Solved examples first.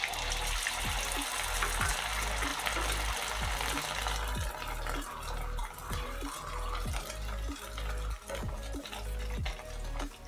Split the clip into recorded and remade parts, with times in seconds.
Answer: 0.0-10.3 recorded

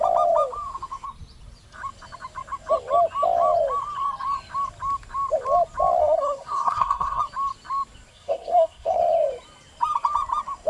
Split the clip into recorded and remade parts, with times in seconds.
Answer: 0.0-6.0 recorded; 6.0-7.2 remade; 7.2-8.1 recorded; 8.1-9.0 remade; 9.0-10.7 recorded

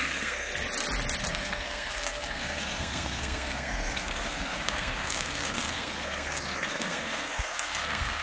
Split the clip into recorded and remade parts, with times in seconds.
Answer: 0.0-0.5 remade; 0.5-1.3 recorded; 1.3-8.2 remade